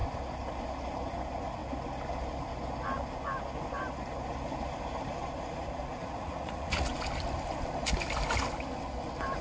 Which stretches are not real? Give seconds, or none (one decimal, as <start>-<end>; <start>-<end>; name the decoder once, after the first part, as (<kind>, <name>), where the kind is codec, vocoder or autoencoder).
6.0-6.9 (vocoder, Vocos)